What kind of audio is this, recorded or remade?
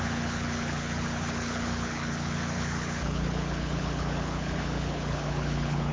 remade